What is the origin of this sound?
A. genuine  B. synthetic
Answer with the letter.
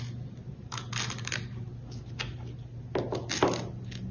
A